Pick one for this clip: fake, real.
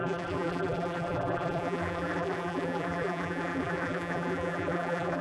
fake